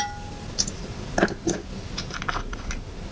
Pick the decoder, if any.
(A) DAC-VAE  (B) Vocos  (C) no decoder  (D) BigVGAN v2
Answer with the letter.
C